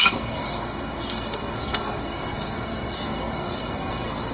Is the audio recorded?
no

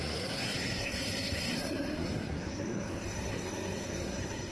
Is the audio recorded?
no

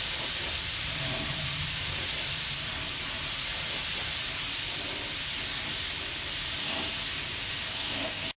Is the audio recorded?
yes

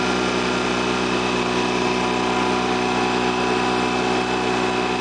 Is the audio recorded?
yes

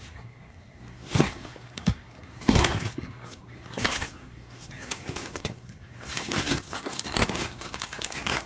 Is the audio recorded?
no